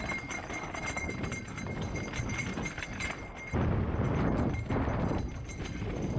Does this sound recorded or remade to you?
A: recorded